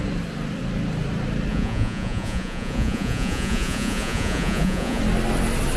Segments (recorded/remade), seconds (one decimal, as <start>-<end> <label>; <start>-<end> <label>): 0.0-1.5 recorded; 1.5-5.0 remade; 5.0-5.8 recorded